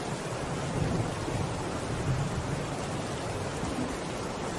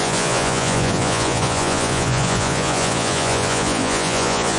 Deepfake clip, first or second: second